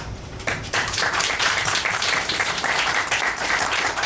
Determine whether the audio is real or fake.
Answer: fake